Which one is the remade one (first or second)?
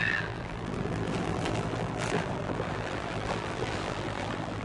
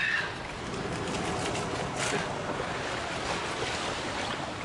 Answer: first